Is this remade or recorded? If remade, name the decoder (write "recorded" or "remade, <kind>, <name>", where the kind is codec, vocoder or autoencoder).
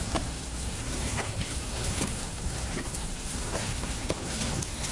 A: remade, codec, SNAC